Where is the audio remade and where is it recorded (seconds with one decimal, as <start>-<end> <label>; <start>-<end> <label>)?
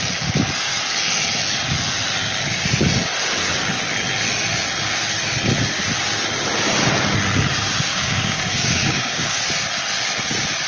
0.0-7.9 recorded; 7.9-9.4 remade; 9.4-10.7 recorded